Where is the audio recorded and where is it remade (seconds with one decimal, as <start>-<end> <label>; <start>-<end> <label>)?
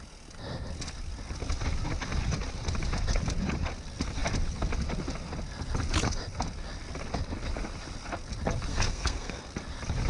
0.0-8.7 recorded; 8.7-9.4 remade; 9.4-10.1 recorded